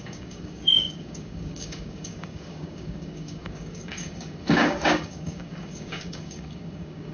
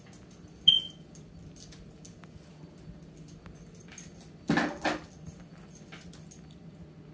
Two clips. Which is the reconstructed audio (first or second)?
first